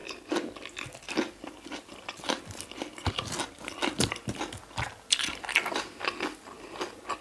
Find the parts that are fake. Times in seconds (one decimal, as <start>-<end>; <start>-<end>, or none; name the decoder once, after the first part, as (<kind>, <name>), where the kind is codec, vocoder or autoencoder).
none

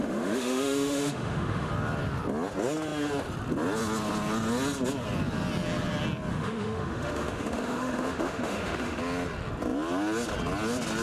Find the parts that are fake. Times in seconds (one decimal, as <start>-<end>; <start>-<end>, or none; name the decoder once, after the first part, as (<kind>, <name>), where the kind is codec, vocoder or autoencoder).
0.0-1.7 (autoencoder, DAC-VAE); 6.3-9.0

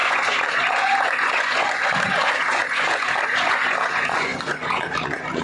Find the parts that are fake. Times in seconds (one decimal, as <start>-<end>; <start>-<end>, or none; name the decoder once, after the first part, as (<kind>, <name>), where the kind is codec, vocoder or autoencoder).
0.0-5.4 (vocoder, Vocos)